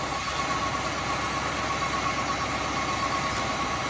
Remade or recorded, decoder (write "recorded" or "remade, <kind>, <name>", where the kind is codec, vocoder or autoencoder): recorded